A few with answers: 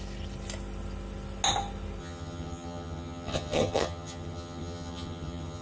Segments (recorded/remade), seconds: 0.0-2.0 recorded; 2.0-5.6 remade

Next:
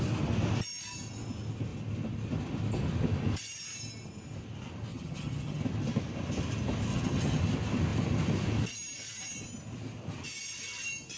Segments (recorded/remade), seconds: 0.0-4.9 recorded; 4.9-5.6 remade; 5.6-6.9 recorded; 6.9-7.4 remade; 7.4-11.2 recorded

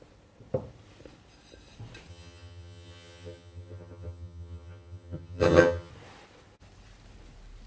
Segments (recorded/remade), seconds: 0.0-2.1 recorded; 2.1-5.9 remade; 5.9-7.7 recorded

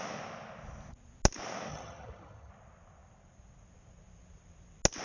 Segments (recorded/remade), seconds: 0.0-1.7 recorded; 1.7-2.5 remade; 2.5-5.0 recorded

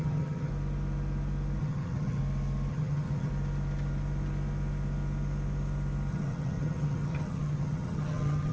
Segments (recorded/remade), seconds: 0.0-0.5 remade; 0.5-1.6 recorded; 1.6-2.2 remade; 2.2-2.7 recorded; 2.7-3.3 remade; 3.3-6.1 recorded; 6.1-8.5 remade

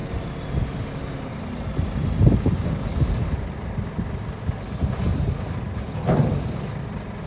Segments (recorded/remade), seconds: 0.0-7.3 recorded

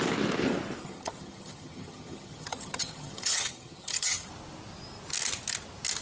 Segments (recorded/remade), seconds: 0.0-0.8 recorded; 0.8-4.3 remade; 4.3-6.0 recorded